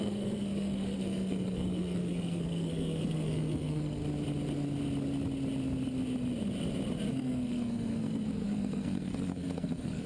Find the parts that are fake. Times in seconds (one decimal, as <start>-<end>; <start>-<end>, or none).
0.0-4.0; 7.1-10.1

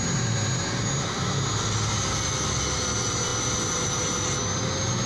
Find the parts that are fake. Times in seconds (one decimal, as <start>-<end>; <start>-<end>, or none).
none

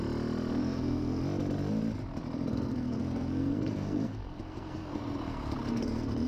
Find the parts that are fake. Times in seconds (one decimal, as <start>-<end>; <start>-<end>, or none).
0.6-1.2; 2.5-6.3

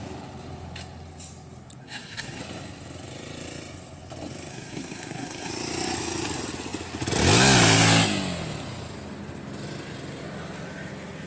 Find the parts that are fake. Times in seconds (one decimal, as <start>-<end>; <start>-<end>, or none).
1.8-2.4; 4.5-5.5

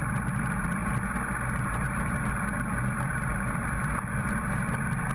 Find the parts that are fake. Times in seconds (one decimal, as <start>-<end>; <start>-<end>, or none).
none

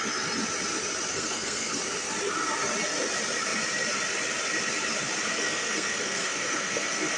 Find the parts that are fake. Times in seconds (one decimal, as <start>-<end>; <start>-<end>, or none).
1.1-1.8; 5.3-7.2

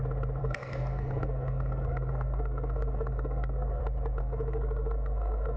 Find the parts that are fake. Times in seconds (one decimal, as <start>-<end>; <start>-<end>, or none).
0.4-3.8; 4.2-5.6